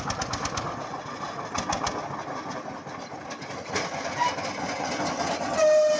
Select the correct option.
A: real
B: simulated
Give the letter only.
A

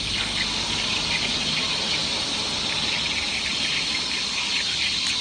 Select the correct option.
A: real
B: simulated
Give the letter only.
A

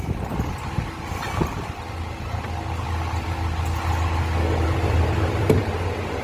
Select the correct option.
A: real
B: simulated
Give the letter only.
A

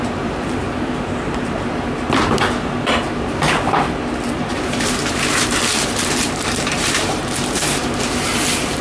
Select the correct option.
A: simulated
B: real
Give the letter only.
A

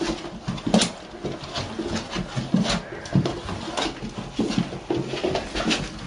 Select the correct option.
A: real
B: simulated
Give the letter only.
A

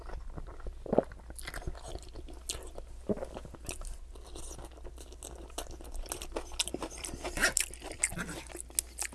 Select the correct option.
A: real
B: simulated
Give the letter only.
A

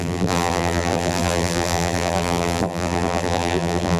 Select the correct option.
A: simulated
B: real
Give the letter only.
A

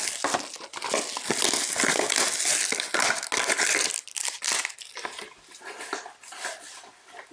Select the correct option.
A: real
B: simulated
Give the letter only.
A